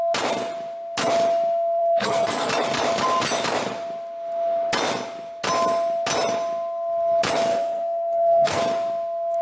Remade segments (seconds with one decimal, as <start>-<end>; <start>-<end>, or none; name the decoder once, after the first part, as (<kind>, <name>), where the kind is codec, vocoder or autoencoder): 1.8-2.5 (codec, SNAC); 7.5-8.6